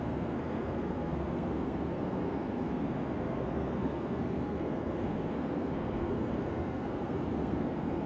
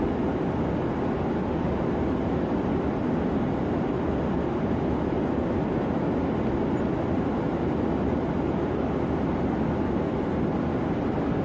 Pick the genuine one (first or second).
second